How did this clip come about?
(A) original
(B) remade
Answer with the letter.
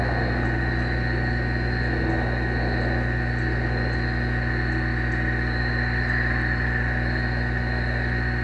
A